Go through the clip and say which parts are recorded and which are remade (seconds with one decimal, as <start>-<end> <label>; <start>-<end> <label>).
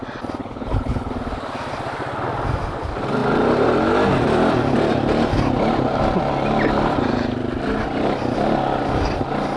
0.0-0.4 recorded; 0.4-1.1 remade; 1.1-9.6 recorded